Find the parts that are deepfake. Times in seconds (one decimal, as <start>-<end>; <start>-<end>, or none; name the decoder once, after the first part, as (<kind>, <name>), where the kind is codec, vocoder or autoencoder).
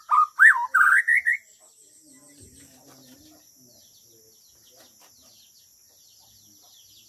none